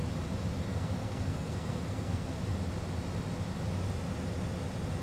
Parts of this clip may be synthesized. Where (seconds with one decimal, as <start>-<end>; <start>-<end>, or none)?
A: 0.7-2.4